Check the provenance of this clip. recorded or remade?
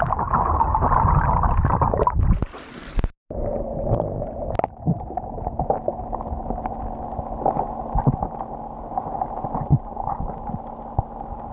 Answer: recorded